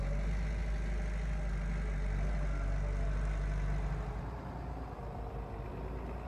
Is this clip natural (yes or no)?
yes